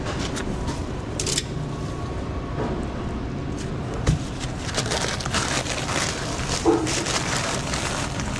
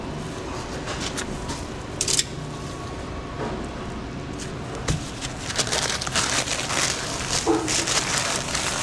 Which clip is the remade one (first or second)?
first